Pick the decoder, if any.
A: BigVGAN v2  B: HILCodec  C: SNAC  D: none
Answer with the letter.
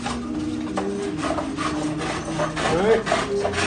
D